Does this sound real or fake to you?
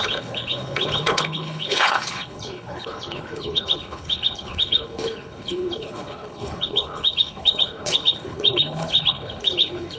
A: fake